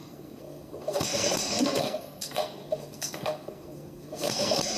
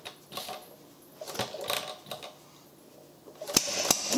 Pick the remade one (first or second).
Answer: first